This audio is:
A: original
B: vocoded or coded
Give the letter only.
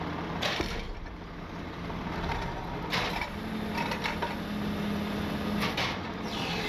A